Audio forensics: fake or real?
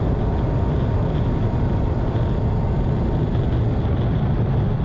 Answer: real